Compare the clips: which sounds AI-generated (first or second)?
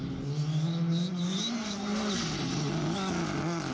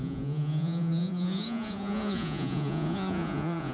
second